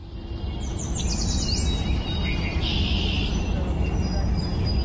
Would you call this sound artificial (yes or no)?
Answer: no